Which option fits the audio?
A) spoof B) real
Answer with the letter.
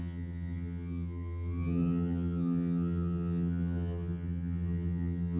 A